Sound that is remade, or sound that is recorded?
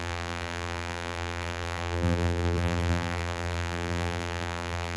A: remade